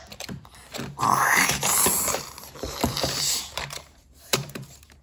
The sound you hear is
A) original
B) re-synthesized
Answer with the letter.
B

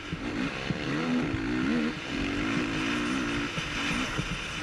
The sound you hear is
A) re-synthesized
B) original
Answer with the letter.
B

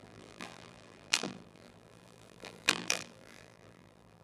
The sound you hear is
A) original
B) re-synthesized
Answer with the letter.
B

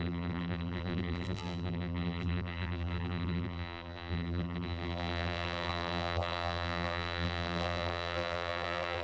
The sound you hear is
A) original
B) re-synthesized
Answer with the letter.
B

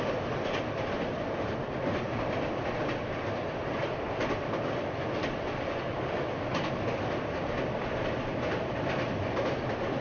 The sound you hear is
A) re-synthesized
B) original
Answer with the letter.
B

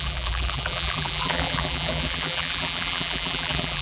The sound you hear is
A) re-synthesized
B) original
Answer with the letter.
A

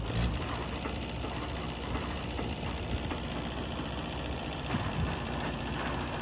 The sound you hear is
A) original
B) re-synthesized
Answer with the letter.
B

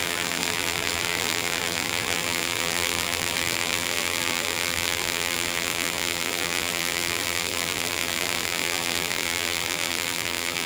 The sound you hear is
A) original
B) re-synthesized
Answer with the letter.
B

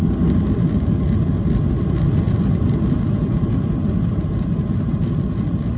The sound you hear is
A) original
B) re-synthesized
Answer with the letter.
A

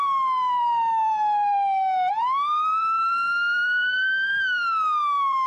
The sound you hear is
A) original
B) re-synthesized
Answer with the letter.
B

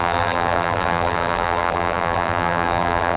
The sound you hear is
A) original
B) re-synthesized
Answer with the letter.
B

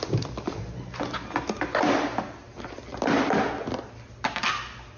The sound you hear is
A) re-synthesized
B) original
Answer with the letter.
B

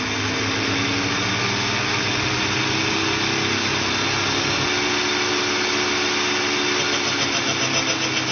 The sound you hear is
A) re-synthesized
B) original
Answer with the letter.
B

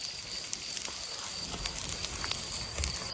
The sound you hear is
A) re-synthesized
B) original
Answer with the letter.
B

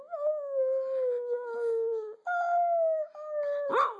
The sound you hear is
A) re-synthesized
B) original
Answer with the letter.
B